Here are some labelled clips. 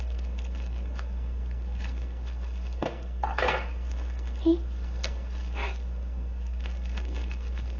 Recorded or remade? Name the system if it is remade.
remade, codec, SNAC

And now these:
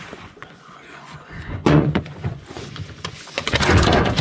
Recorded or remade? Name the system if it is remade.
remade, vocoder, Vocos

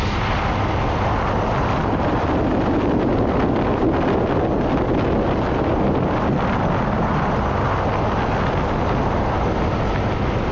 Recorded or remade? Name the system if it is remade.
recorded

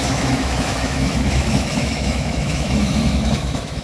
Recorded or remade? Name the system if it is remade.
remade, autoencoder, DAC-VAE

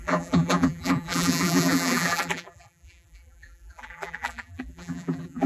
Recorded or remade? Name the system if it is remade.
remade, vocoder, BigVGAN v2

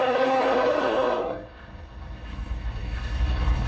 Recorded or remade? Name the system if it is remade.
remade, codec, SNAC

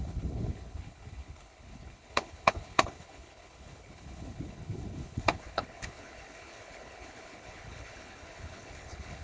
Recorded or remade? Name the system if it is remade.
remade, codec, HILCodec